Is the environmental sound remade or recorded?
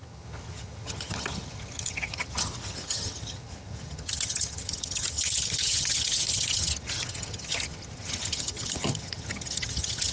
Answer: remade